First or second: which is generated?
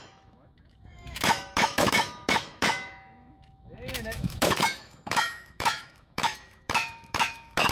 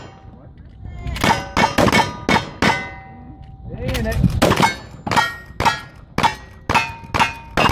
first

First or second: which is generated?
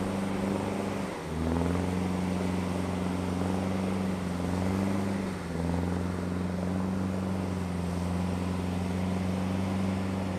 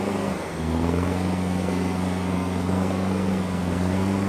second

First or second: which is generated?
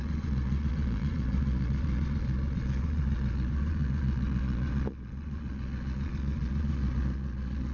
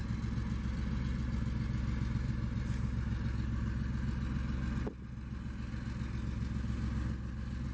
first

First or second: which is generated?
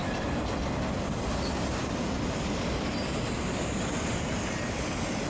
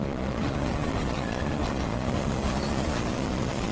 second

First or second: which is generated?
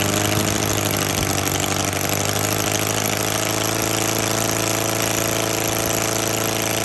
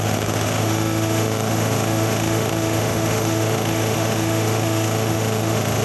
second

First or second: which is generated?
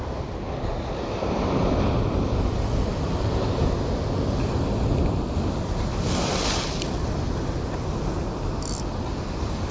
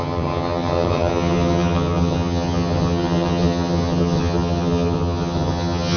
second